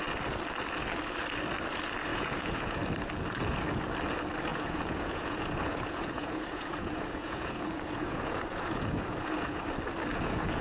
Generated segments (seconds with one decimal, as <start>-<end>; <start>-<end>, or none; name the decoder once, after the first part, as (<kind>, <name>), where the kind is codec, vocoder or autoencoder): 2.1-2.8 (vocoder, Vocos); 4.5-9.7; 10.1-10.6

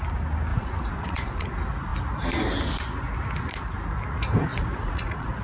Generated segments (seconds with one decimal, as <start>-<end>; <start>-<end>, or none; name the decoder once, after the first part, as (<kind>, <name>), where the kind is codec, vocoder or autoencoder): 0.5-1.5 (vocoder, Vocos); 4.5-5.4

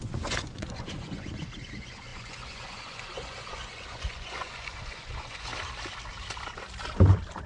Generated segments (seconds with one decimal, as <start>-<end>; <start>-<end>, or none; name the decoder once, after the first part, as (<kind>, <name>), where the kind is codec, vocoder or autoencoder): 0.0-5.5 (vocoder, Vocos)

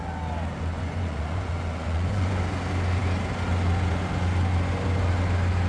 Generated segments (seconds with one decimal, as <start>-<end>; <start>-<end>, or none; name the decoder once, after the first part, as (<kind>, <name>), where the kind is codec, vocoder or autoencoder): 0.7-2.4 (vocoder, Vocos)

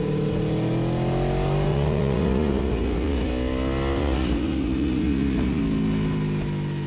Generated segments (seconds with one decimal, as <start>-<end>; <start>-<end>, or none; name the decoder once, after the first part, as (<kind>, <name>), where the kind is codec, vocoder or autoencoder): 1.7-3.3 (vocoder, Vocos); 4.0-5.6